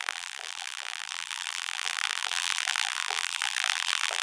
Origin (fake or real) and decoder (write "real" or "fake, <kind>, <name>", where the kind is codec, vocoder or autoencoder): fake, vocoder, BigVGAN v2